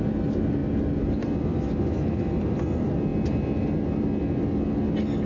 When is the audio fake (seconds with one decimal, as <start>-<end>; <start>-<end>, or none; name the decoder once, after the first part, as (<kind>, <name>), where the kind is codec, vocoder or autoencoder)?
none